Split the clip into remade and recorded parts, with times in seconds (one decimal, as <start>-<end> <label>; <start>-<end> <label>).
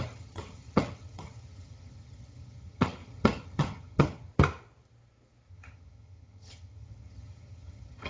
0.0-4.3 remade; 4.3-5.5 recorded; 5.5-8.1 remade